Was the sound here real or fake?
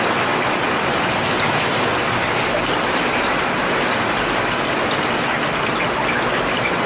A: real